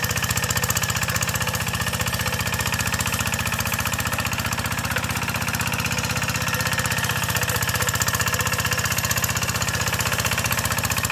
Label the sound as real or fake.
real